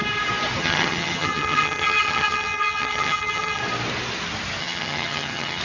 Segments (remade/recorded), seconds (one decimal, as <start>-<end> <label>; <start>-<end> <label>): 0.0-0.6 recorded; 0.6-3.6 remade; 3.6-4.6 recorded; 4.6-5.6 remade